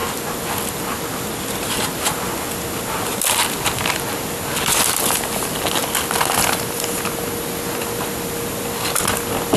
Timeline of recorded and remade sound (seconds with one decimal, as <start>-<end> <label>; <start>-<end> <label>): 0.0-9.6 recorded